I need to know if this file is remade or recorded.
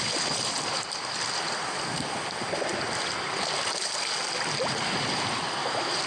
remade